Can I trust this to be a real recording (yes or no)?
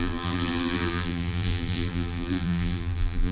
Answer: no